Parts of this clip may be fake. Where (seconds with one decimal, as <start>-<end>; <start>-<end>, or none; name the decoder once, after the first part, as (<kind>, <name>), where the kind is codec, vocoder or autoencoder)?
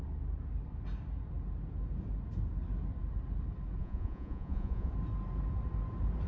3.8-4.9 (vocoder, Vocos)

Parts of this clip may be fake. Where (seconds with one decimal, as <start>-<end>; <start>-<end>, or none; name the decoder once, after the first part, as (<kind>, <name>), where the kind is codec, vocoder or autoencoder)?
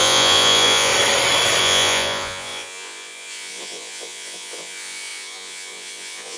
0.0-0.9 (vocoder, Vocos); 1.6-6.4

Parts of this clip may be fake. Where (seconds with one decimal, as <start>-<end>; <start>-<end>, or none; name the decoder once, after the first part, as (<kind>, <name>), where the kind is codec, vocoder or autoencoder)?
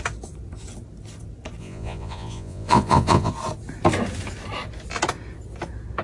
1.6-3.3 (vocoder, Vocos)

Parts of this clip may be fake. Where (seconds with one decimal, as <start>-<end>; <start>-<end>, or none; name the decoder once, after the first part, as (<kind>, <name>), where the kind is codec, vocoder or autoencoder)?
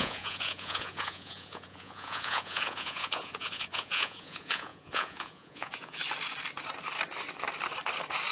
0.0-6.0 (vocoder, Vocos)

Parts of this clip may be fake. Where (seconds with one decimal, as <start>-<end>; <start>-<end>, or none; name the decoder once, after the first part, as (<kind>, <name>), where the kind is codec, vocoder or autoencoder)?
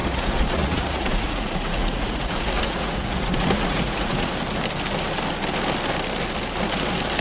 0.0-4.3 (vocoder, Vocos)